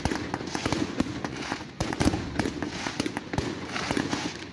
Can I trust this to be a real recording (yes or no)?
no